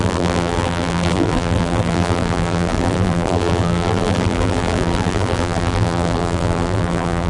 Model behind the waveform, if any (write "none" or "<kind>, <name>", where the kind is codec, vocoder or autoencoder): vocoder, BigVGAN v2